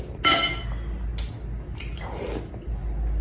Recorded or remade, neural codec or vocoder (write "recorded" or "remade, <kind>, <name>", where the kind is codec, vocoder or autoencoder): recorded